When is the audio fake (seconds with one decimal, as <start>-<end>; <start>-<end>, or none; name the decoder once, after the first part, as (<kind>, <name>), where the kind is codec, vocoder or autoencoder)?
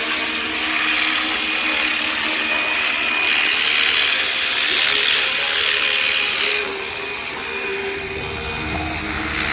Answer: none